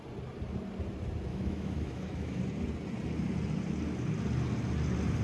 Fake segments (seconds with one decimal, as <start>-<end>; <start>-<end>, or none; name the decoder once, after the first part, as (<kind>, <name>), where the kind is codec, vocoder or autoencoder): 1.3-2.4 (autoencoder, DAC-VAE)